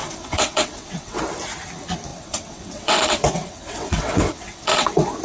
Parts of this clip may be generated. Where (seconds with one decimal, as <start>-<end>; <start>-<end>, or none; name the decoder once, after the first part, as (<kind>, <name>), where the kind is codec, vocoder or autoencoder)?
0.0-1.2 (vocoder, WaveNeXt); 2.1-5.2